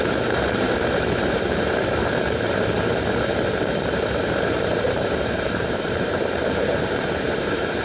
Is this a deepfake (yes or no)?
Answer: yes